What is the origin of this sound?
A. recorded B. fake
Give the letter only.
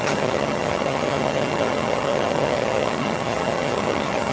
B